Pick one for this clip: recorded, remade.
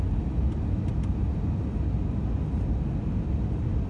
recorded